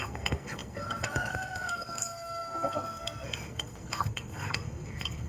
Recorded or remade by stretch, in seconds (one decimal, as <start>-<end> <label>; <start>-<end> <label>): 0.0-5.3 remade